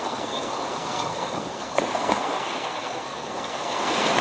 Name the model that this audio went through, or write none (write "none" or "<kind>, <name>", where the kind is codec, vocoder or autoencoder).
codec, SNAC